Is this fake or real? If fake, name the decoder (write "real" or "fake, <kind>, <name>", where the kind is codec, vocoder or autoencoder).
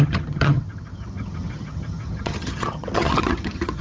fake, vocoder, HiFi-GAN